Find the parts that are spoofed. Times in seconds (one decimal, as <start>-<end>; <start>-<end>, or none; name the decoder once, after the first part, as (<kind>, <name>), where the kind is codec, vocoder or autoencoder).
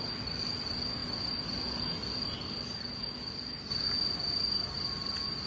none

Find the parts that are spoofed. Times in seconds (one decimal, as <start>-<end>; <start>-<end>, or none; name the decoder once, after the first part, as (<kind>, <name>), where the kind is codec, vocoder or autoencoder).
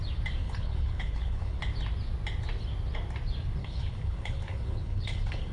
0.4-1.6 (codec, HILCodec); 3.6-5.5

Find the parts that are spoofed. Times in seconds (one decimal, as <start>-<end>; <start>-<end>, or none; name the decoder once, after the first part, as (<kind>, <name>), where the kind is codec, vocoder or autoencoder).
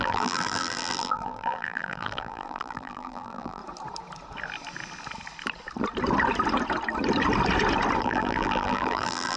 0.0-3.6 (vocoder, BigVGAN v2); 8.0-9.4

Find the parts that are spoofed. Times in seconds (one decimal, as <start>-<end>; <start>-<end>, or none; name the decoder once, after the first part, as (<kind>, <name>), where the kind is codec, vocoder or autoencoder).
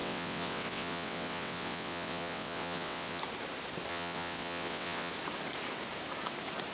0.0-3.2 (vocoder, WaveNeXt); 3.9-5.1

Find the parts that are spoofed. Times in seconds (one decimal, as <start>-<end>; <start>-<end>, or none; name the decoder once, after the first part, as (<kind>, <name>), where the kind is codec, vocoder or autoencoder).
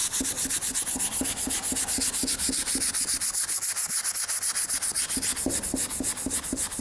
none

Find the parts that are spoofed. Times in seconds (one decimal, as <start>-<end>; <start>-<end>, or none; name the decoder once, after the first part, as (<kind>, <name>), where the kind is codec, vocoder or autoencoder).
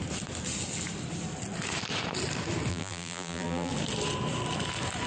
2.7-3.7 (vocoder, BigVGAN v2)